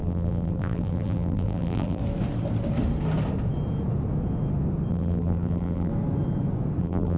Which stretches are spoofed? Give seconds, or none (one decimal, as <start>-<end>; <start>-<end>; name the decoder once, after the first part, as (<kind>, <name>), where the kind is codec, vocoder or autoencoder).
0.0-2.0 (vocoder, BigVGAN v2); 4.9-5.9; 6.8-7.2